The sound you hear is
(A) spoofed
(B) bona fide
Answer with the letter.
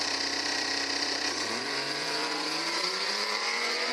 A